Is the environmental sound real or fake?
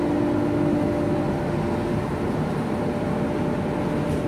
real